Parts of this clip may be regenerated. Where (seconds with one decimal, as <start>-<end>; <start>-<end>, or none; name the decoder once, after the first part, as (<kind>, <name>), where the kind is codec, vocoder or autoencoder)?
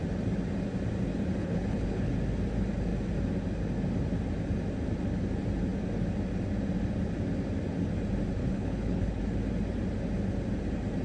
1.4-2.1 (codec, HILCodec); 8.4-9.2